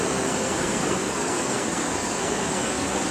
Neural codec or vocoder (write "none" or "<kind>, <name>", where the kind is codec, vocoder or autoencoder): codec, SNAC